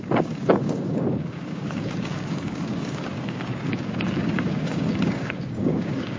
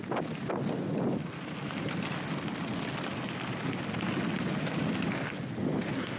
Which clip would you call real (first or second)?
second